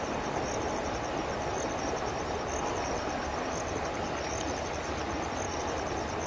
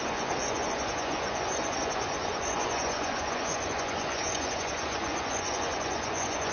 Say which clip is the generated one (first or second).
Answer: second